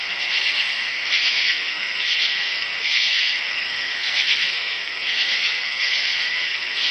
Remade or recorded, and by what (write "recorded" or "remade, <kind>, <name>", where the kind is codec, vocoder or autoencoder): remade, codec, SNAC